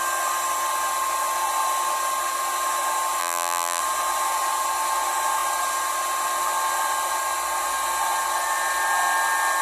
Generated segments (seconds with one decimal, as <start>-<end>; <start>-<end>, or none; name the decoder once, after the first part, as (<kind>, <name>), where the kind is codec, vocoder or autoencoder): 3.2-3.8 (vocoder, BigVGAN v2)